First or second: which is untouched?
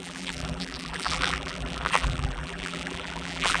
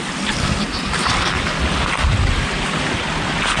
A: second